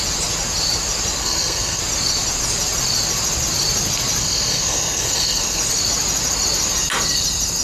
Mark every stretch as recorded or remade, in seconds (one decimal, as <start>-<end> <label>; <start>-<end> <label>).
0.0-1.2 recorded; 1.2-1.8 remade; 1.8-4.2 recorded; 4.2-5.6 remade; 5.6-7.6 recorded